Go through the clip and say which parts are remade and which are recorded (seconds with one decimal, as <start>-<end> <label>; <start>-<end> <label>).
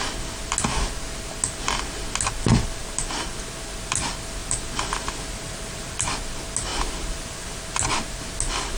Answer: 0.0-2.8 recorded; 2.8-3.4 remade; 3.4-4.4 recorded; 4.4-6.0 remade; 6.0-6.7 recorded; 6.7-7.6 remade; 7.6-8.8 recorded